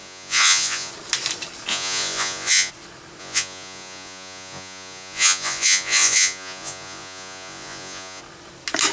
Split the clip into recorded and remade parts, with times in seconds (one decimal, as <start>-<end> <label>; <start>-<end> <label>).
0.0-0.9 remade; 0.9-1.7 recorded; 1.7-2.7 remade; 2.7-3.2 recorded; 3.2-8.2 remade; 8.2-8.9 recorded